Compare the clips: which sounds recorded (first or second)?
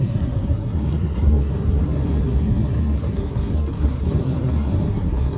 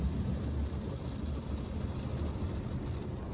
second